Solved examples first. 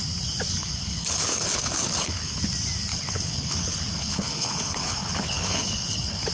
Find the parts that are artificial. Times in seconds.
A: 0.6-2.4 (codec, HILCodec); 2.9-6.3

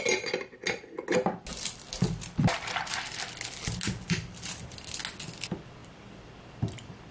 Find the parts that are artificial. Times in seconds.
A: 1.5-5.0 (vocoder, BigVGAN v2); 5.8-7.1

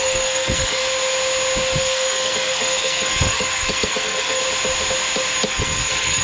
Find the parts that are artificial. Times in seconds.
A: 0.0-0.8 (codec, SNAC); 1.8-4.4; 5.5-6.2